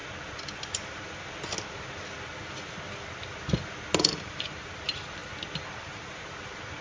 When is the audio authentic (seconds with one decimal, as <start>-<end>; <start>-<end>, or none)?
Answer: 0.0-4.0; 5.2-5.8